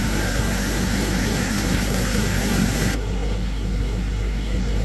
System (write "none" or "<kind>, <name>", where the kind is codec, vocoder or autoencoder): codec, SNAC